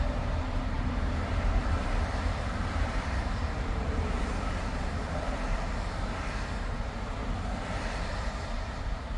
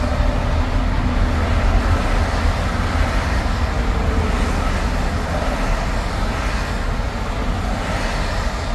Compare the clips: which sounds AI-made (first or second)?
first